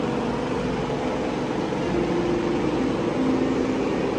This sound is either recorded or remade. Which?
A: recorded